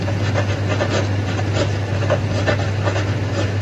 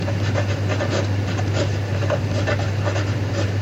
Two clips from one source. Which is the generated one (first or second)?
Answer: second